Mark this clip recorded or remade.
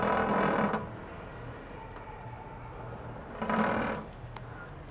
recorded